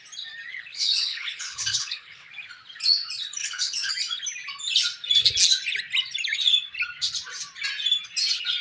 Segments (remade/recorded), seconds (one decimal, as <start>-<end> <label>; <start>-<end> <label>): 0.0-0.5 recorded; 0.5-2.3 remade; 2.3-3.4 recorded; 3.4-3.9 remade; 3.9-8.6 recorded